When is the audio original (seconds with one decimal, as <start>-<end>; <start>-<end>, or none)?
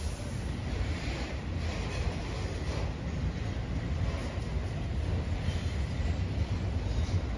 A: 4.2-6.4